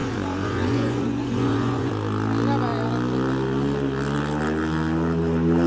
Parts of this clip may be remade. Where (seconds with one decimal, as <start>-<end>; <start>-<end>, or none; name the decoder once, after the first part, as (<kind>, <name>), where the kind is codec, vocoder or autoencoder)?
0.0-1.9 (vocoder, Vocos)